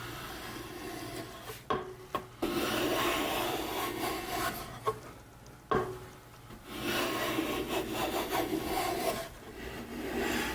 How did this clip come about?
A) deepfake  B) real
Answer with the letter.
B